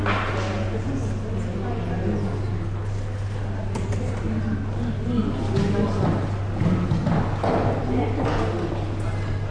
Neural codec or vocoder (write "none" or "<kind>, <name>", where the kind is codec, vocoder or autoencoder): none